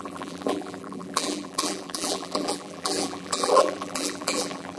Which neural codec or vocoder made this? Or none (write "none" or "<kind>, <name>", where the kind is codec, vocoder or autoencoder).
vocoder, BigVGAN v2